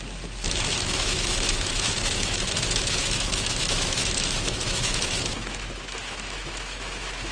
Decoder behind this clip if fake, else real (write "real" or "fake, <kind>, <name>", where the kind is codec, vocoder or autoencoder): fake, autoencoder, DAC-VAE